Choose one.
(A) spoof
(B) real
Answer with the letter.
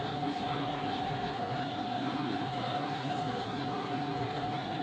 A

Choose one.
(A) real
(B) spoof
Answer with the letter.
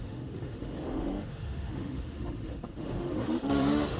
B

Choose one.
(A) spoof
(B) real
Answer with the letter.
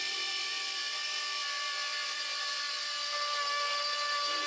B